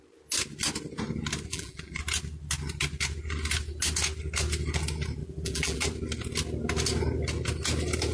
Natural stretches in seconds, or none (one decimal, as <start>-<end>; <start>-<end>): 0.0-1.5; 2.0-5.2; 5.8-8.1